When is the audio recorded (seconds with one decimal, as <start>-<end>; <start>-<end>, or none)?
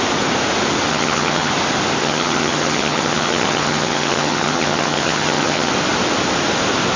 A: 0.0-0.9; 1.5-2.0; 5.7-7.0